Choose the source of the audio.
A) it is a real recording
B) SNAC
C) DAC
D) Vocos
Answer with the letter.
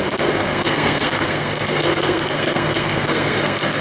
B